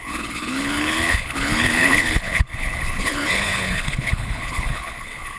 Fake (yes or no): yes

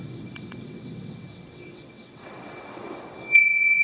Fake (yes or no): yes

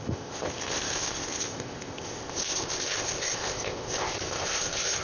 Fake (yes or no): yes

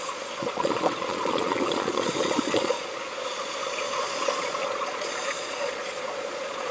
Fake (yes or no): yes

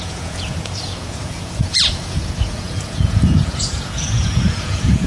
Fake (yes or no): yes